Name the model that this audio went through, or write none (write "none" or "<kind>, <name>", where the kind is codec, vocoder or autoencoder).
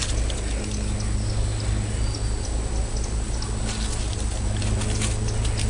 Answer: none